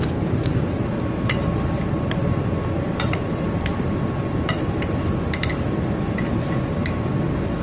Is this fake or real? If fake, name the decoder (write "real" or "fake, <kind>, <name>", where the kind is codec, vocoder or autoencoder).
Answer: fake, vocoder, BigVGAN v2